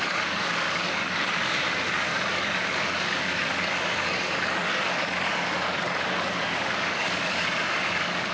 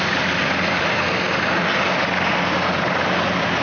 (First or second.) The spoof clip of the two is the first